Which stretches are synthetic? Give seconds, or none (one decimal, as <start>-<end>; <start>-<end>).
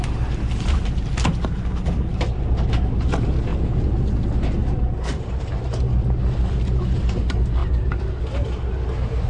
3.5-4.0